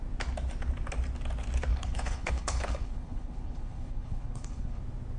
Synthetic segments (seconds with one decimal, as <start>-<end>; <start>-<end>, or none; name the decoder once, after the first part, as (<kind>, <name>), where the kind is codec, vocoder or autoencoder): 1.7-4.8 (codec, HILCodec)